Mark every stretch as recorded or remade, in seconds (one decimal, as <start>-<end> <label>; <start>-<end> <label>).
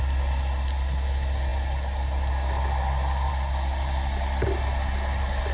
0.0-5.5 recorded